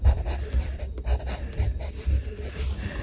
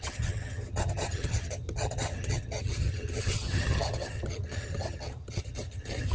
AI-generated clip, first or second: second